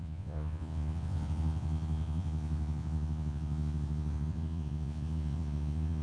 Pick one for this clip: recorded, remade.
remade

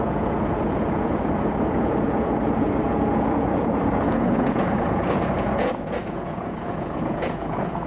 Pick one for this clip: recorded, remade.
remade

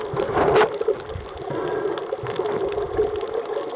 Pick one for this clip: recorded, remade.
recorded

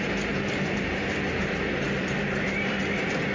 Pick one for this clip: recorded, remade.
recorded